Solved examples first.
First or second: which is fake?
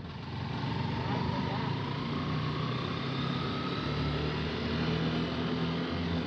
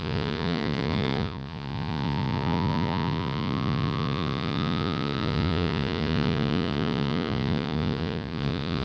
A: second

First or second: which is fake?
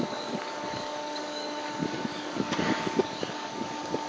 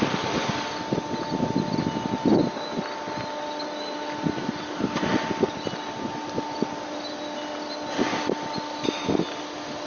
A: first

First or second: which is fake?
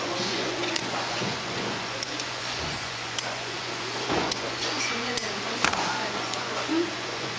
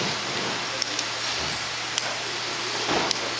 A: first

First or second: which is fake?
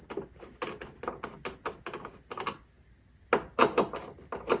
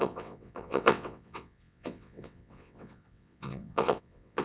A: second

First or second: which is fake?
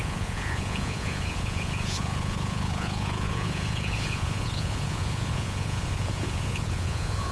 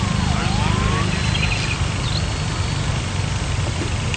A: first